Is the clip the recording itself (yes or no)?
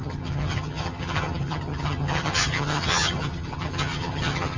no